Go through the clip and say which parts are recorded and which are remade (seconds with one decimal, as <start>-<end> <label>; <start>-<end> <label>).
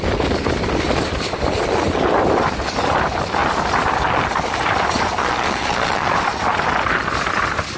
0.0-5.2 recorded; 5.2-6.1 remade; 6.1-7.8 recorded